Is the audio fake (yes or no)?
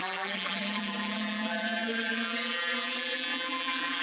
yes